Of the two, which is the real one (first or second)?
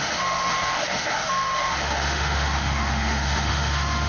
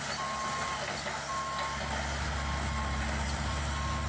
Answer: second